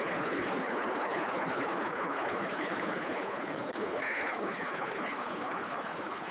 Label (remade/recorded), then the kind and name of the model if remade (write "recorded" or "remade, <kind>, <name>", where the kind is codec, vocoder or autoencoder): remade, codec, HILCodec